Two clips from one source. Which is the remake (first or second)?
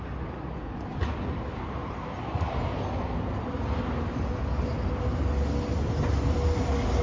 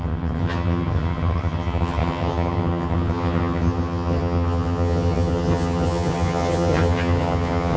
second